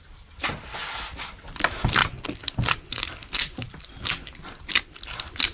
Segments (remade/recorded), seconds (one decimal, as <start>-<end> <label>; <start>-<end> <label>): 0.0-5.5 recorded